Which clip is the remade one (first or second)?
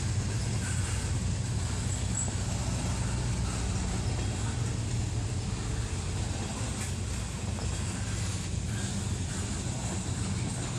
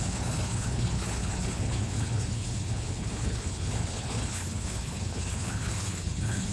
second